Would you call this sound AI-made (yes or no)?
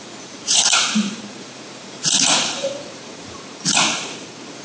yes